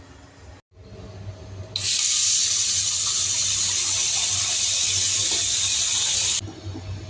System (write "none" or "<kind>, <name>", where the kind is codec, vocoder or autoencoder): none